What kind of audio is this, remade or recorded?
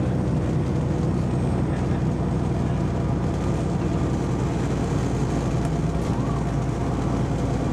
recorded